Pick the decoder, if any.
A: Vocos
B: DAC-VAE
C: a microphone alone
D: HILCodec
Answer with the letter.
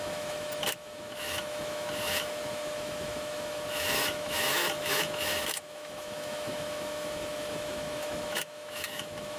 B